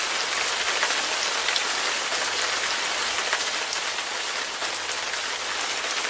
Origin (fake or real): real